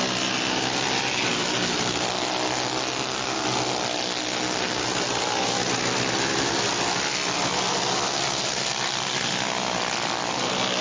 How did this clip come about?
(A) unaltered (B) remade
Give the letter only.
A